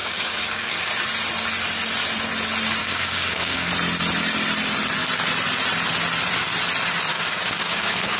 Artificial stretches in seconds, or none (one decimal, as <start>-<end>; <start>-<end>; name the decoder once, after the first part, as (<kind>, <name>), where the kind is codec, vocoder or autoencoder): 0.0-0.9 (codec, DAC); 2.8-3.7; 7.1-8.2